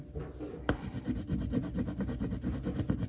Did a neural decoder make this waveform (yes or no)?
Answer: no